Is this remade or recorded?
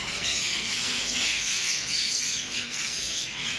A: remade